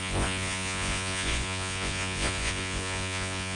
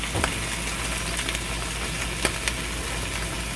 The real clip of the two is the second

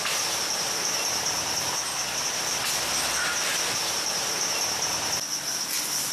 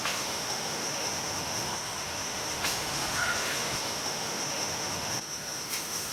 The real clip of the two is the first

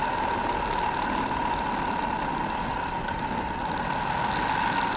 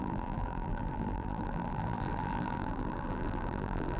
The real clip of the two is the first